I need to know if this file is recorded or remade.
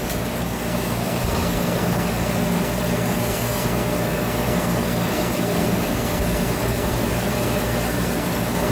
remade